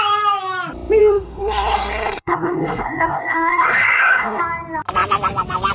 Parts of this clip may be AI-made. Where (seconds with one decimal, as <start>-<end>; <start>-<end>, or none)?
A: 1.0-4.4